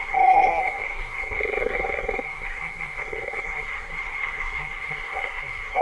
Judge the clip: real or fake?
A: fake